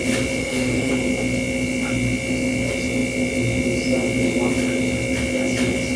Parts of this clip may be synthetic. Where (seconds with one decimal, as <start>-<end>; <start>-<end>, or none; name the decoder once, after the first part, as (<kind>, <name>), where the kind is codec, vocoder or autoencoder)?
0.4-0.9 (autoencoder, DAC-VAE)